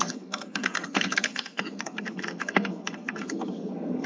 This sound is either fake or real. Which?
fake